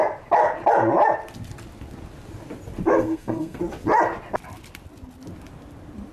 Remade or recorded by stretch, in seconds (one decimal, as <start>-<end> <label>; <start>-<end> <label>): 0.0-2.9 recorded; 2.9-3.6 remade; 3.6-6.1 recorded